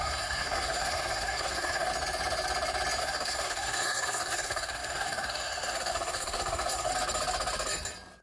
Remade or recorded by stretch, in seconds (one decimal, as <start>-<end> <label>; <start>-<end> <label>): 0.0-1.9 remade; 1.9-3.0 recorded; 3.0-6.9 remade; 6.9-8.2 recorded

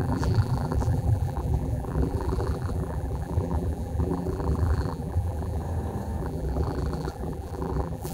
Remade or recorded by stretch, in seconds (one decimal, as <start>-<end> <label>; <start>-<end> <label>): 0.0-5.6 remade; 5.6-6.2 recorded; 6.2-8.1 remade

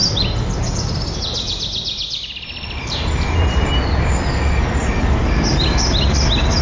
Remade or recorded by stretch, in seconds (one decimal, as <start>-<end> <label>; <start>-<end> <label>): 0.0-6.6 recorded

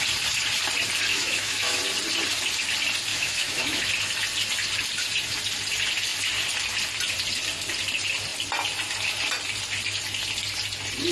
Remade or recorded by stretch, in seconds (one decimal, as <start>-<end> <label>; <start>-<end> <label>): 0.0-1.1 recorded; 1.1-1.8 remade; 1.8-3.1 recorded; 3.1-3.9 remade; 3.9-11.1 recorded